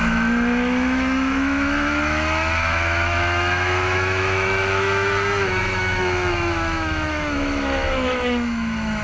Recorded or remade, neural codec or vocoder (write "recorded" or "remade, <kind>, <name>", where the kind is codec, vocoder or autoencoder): remade, autoencoder, DAC-VAE